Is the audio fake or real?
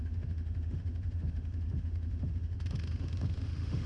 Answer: fake